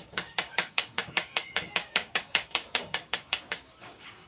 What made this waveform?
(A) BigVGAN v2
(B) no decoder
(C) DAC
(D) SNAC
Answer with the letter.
C